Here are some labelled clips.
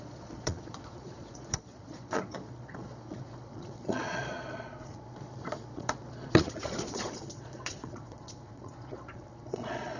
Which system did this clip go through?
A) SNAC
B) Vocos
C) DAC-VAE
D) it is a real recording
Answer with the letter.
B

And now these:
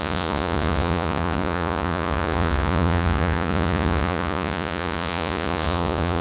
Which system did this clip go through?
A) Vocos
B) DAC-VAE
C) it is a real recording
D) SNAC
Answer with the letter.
A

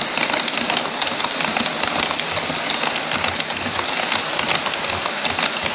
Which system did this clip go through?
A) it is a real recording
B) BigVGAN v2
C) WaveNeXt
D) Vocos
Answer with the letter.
A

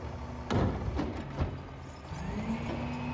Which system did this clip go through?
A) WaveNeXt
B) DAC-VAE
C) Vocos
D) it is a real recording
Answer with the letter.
D